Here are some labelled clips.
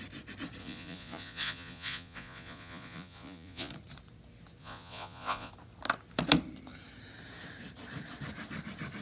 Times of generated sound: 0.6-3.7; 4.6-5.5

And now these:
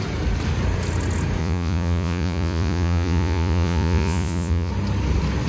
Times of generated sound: 1.4-4.7

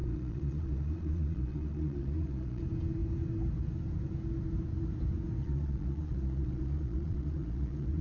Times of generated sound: 0.0-2.6; 5.4-8.0

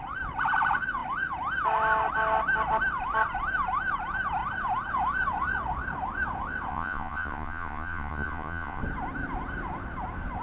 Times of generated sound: 6.7-8.8

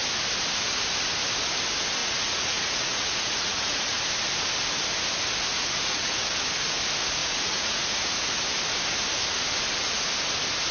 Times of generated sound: 2.0-4.0; 5.5-6.3; 7.2-8.3

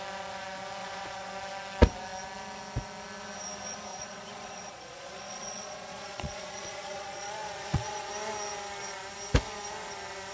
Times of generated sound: 0.8-1.3; 3.9-8.1

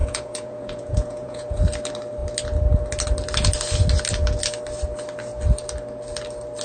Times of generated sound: 0.0-1.6

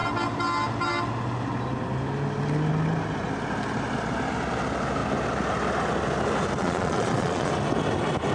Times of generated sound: 6.6-7.5